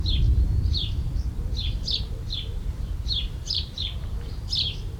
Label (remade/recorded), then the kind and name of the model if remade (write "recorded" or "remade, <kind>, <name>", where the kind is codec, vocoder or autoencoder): remade, vocoder, BigVGAN v2